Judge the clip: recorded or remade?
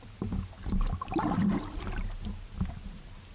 recorded